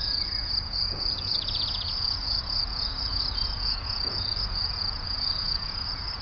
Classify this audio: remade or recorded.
remade